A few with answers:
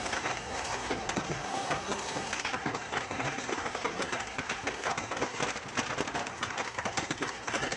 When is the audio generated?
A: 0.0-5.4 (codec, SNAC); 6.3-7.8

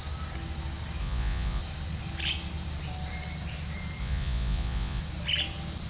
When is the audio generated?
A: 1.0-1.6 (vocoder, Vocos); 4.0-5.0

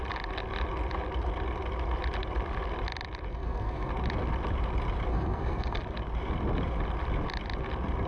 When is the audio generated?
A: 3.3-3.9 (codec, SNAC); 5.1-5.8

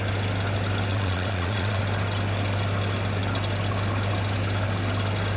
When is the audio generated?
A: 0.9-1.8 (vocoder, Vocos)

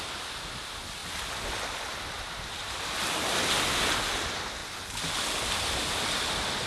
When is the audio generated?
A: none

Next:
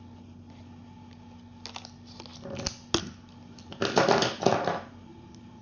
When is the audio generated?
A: none

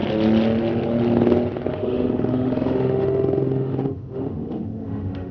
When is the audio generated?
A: 1.7-5.3 (autoencoder, DAC-VAE)